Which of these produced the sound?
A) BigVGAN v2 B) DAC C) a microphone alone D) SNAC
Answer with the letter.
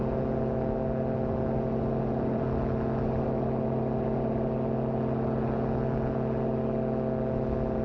C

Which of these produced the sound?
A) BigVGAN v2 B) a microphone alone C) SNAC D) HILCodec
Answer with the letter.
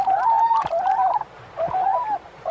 A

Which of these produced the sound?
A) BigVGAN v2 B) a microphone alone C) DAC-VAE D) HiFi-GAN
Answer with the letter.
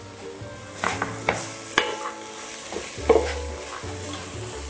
B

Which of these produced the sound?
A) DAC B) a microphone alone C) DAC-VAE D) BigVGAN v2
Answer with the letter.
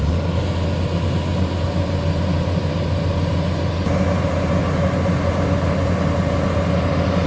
B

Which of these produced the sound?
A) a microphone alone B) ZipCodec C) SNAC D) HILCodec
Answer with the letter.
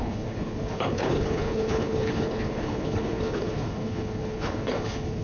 D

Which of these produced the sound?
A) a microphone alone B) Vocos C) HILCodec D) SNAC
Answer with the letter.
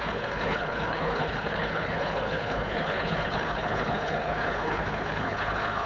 C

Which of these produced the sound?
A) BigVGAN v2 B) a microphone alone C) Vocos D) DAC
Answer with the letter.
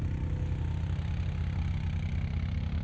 B